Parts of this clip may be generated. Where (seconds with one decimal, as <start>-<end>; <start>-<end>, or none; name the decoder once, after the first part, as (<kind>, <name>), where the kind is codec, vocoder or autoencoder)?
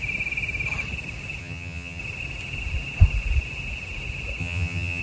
1.4-2.0 (vocoder, HiFi-GAN); 4.4-5.0